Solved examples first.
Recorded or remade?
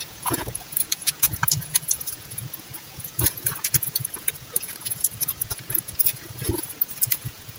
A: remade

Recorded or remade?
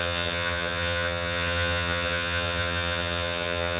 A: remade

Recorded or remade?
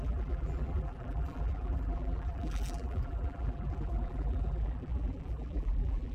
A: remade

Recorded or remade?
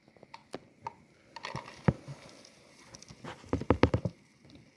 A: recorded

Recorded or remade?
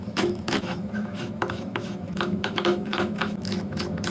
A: remade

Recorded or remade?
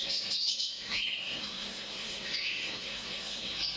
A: remade